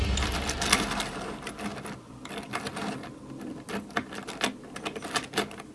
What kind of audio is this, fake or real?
real